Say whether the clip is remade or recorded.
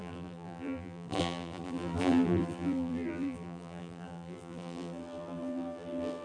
remade